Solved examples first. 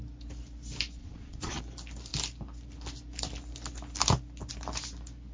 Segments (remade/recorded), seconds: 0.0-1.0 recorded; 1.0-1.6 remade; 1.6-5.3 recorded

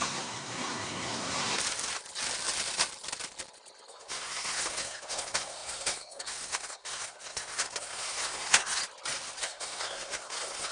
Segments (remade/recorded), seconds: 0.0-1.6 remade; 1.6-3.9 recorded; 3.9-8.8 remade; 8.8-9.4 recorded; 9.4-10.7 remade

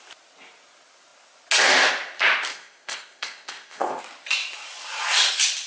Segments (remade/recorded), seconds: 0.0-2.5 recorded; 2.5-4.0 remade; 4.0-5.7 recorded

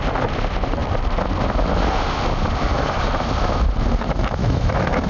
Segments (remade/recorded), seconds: 0.0-4.4 recorded; 4.4-5.1 remade

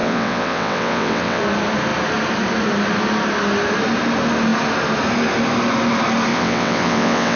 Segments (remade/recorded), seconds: 0.0-1.4 remade; 1.4-6.3 recorded; 6.3-7.4 remade

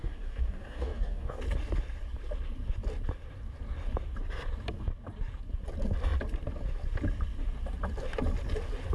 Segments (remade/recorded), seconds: 0.0-1.4 remade; 1.4-8.9 recorded